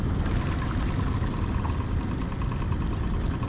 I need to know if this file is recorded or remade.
recorded